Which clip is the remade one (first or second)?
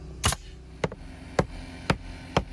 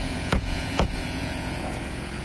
second